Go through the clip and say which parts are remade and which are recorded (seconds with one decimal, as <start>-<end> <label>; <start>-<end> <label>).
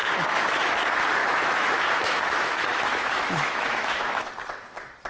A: 0.0-0.7 remade; 0.7-1.2 recorded; 1.2-4.3 remade; 4.3-5.1 recorded